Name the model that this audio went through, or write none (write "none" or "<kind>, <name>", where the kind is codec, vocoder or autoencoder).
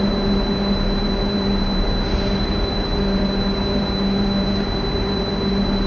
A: vocoder, BigVGAN v2